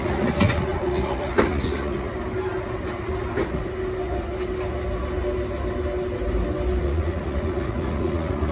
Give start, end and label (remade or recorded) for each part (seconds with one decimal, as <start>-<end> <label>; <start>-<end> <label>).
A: 0.0-2.1 remade; 2.1-6.8 recorded; 6.8-8.5 remade